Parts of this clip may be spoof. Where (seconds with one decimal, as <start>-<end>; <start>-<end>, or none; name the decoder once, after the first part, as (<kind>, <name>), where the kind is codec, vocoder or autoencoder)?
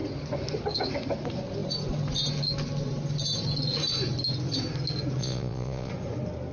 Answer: 5.2-5.9 (vocoder, Vocos)